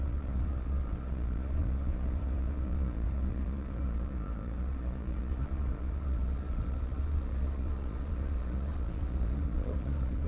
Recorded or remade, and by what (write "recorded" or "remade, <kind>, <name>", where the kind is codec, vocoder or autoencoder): remade, vocoder, Vocos